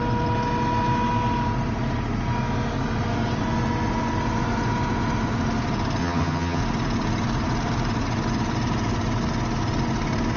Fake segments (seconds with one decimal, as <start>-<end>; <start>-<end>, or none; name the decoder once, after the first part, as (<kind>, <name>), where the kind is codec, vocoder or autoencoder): 6.0-6.6 (vocoder, HiFi-GAN)